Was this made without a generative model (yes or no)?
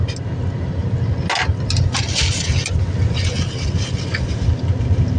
yes